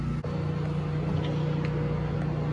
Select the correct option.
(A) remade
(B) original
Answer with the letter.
B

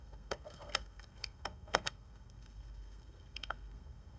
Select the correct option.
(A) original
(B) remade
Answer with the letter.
B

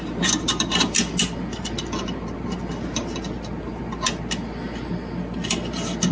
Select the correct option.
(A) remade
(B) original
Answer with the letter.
B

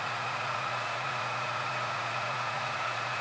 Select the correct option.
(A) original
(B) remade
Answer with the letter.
B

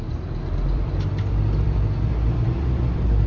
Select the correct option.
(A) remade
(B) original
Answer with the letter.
A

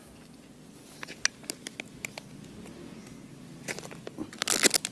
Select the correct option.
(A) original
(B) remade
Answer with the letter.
A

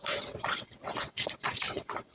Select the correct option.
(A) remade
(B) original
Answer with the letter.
A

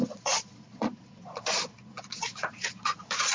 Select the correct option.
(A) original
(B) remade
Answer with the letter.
B